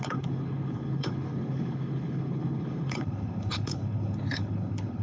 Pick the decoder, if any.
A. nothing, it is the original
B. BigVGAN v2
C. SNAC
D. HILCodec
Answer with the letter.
D